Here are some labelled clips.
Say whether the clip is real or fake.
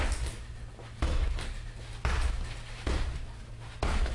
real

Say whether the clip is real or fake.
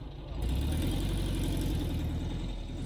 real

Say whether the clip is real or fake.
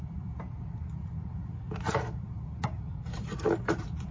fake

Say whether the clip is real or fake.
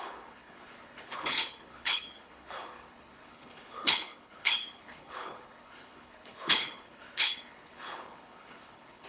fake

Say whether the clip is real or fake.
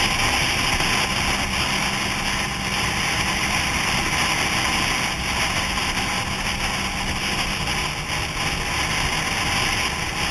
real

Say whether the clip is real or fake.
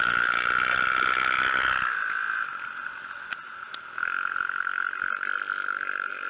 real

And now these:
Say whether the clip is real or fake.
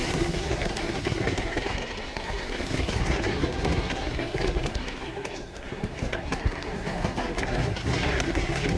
fake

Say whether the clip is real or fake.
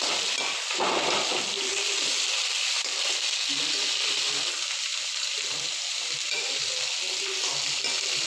real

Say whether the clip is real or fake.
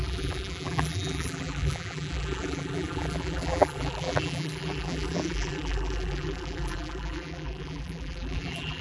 fake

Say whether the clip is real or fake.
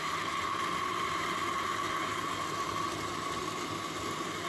real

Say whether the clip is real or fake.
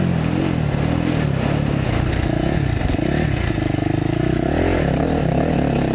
real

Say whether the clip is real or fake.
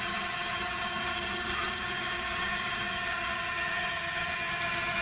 fake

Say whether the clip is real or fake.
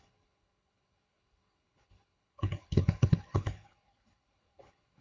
fake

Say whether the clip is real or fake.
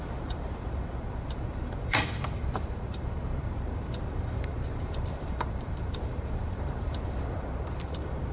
fake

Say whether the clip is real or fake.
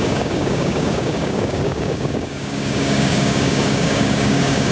fake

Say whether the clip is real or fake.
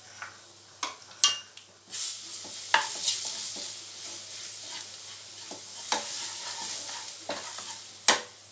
real